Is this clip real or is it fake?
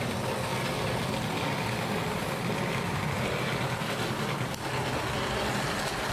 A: real